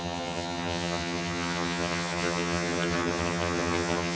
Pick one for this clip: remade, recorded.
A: remade